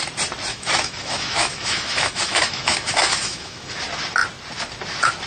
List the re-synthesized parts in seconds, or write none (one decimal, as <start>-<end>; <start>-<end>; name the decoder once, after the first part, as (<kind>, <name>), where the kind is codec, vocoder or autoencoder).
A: 0.5-3.7 (autoencoder, DAC-VAE)